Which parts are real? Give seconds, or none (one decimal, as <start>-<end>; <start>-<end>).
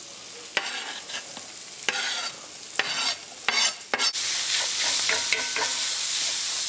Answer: 0.0-5.7